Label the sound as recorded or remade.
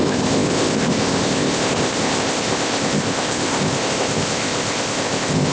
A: remade